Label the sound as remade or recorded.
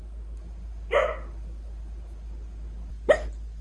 recorded